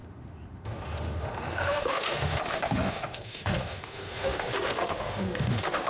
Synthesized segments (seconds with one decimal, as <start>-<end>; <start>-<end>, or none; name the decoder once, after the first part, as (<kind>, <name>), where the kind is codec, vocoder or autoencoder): 0.0-5.9 (autoencoder, DAC-VAE)